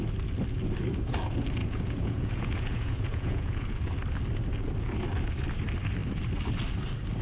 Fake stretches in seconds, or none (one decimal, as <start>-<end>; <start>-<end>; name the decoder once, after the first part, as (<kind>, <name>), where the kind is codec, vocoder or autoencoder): 1.6-3.9 (vocoder, Vocos)